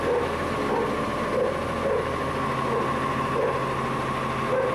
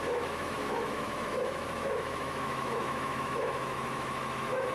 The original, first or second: first